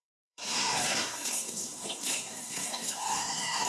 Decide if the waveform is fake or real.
fake